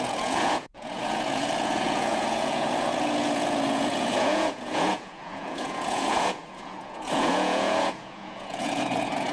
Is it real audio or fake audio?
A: fake